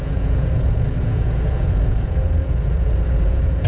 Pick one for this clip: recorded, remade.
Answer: remade